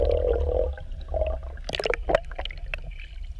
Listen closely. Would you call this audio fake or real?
real